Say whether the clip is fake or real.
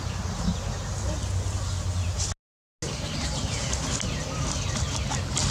real